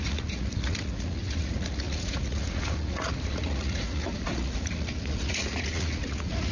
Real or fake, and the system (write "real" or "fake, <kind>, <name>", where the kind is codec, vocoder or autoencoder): fake, vocoder, Vocos